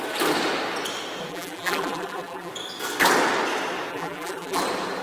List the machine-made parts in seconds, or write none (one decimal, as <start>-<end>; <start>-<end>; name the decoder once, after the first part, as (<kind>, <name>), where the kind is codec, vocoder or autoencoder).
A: 1.3-2.5 (vocoder, BigVGAN v2); 3.9-4.6